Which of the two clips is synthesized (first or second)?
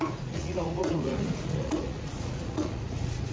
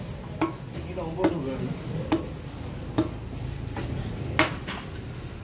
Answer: first